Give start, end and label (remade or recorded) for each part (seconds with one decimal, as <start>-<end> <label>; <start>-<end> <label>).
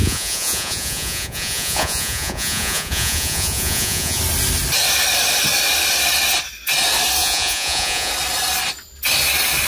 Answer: 0.0-4.2 remade; 4.2-7.2 recorded; 7.2-8.1 remade; 8.1-9.7 recorded